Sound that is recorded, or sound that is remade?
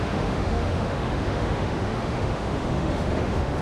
remade